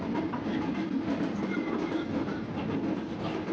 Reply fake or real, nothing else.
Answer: real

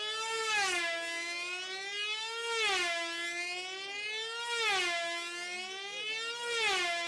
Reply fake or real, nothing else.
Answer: real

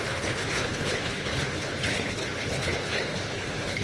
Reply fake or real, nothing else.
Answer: fake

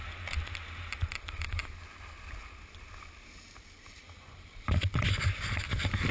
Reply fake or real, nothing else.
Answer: real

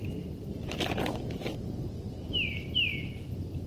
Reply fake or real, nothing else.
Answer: fake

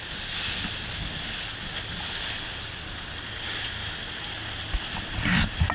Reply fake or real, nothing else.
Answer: real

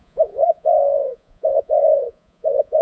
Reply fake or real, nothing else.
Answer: fake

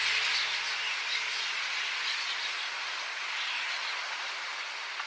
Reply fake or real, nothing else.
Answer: real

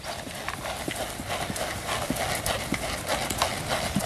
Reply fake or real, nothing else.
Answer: real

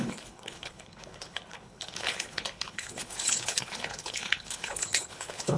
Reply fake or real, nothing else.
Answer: fake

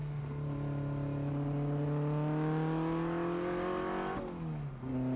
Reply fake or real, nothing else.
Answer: real